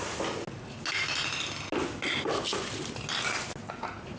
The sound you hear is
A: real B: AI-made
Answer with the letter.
A